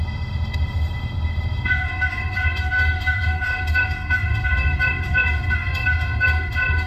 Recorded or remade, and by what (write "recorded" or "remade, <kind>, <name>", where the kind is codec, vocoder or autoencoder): remade, autoencoder, DAC-VAE